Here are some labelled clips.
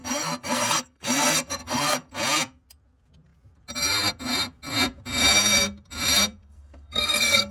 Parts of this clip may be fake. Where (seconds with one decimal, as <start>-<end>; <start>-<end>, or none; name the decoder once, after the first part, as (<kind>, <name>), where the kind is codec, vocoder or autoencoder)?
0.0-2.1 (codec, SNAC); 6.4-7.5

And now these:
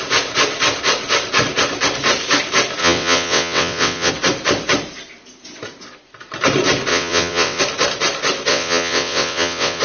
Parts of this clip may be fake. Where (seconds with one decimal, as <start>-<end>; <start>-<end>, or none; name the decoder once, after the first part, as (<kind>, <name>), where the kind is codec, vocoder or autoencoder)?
2.8-4.1 (vocoder, WaveNeXt); 6.9-7.6; 8.5-9.8

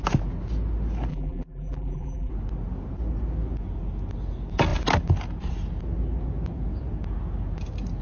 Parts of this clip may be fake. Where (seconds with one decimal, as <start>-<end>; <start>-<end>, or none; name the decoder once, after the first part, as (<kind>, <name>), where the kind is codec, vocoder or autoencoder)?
1.1-2.3 (vocoder, BigVGAN v2)

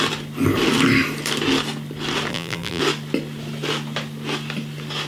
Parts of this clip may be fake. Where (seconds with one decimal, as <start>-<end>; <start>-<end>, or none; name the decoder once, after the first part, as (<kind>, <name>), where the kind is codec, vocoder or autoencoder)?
2.3-2.8 (vocoder, BigVGAN v2)